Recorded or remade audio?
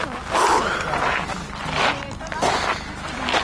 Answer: recorded